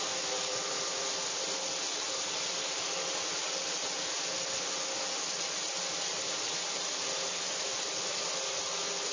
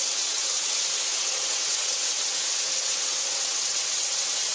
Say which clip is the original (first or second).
first